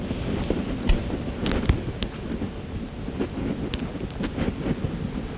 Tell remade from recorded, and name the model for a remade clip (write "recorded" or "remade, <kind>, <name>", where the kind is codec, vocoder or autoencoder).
recorded